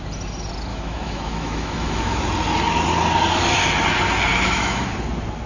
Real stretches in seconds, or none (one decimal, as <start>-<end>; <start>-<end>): 0.0-0.7; 2.2-4.3; 4.9-5.5